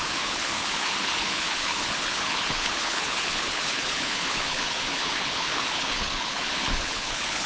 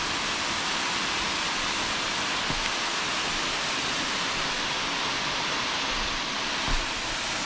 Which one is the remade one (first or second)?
first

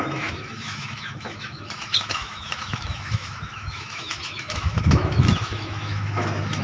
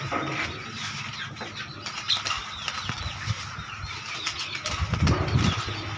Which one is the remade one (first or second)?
first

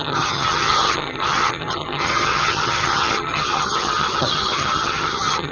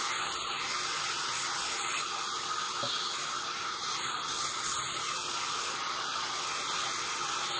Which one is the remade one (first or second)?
first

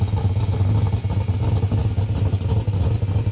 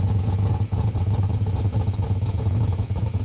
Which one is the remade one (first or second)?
second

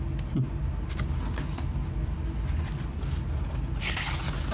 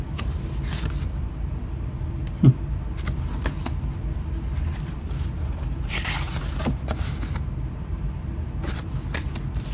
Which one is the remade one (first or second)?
second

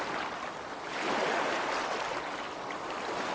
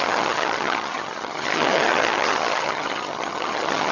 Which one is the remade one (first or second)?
second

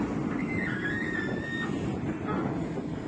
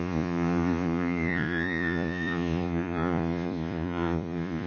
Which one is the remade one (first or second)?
second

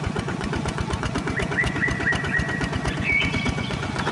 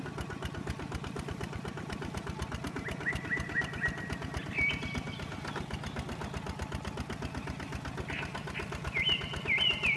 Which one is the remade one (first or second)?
first